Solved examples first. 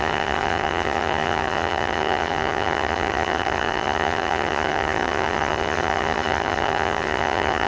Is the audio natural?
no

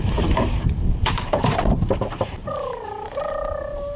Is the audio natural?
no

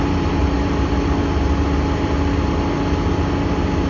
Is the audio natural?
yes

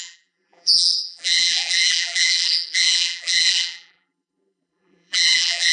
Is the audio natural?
no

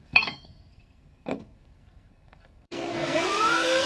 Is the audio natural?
no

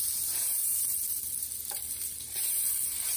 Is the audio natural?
no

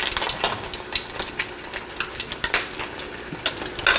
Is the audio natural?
yes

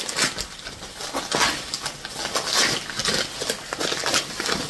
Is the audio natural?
yes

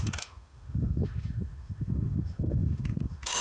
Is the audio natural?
no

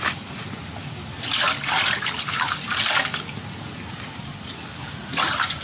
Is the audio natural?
yes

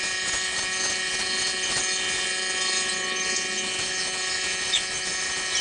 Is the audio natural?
yes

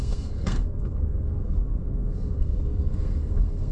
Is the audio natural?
no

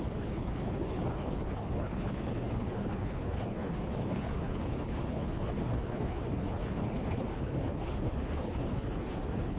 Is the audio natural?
no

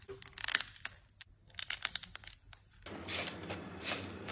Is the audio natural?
yes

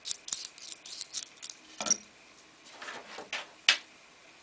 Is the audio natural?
yes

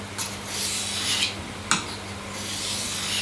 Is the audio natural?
yes